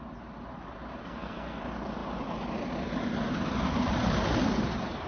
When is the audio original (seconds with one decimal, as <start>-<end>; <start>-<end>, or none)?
0.0-1.0; 1.6-5.1